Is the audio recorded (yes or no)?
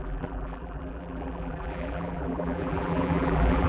no